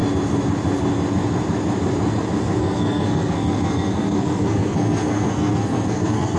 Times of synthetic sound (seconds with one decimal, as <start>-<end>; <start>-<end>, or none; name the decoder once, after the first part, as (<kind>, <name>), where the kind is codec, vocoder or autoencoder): 2.6-6.4 (codec, SNAC)